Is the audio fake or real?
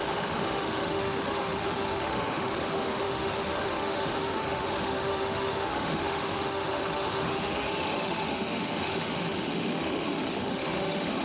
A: fake